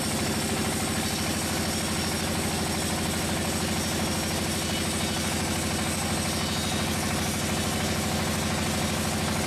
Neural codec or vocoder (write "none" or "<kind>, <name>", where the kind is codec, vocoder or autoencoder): none